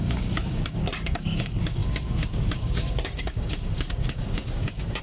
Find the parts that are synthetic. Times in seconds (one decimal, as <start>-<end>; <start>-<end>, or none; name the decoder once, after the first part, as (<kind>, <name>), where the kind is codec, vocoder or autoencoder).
0.0-5.0 (codec, DAC)